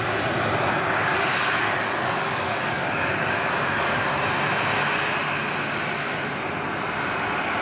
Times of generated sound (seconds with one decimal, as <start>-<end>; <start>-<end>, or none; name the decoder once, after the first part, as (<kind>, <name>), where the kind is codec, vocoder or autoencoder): 1.0-4.0 (codec, DAC)